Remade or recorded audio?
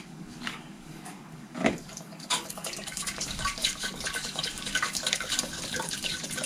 remade